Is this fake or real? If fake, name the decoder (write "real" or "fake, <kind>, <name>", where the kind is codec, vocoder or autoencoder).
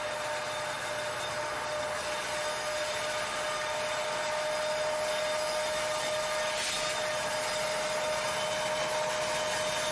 real